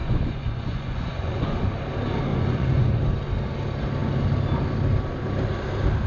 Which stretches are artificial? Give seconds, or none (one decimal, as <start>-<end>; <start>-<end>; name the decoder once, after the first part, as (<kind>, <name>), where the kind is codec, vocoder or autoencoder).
0.0-1.6 (vocoder, Vocos); 2.3-3.0